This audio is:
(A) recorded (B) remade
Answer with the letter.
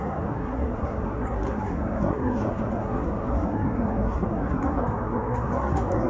B